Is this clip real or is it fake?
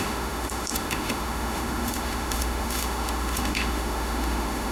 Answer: fake